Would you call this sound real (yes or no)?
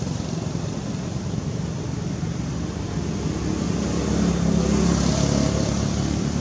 yes